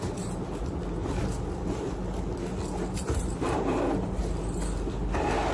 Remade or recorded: recorded